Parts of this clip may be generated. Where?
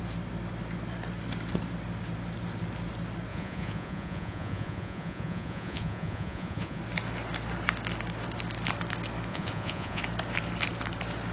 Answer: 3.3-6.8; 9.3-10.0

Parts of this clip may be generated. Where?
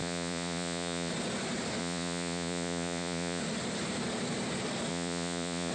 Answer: 0.0-1.1; 1.8-3.4; 4.9-5.7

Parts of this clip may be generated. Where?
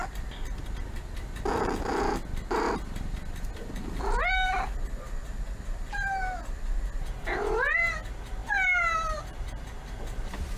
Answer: none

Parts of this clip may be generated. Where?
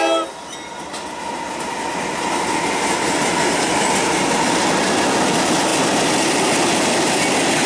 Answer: none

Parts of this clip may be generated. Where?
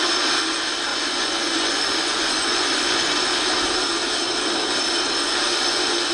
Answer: 0.9-3.3; 5.2-6.1